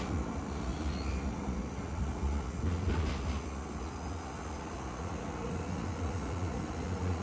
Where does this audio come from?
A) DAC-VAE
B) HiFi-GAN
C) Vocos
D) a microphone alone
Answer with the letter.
C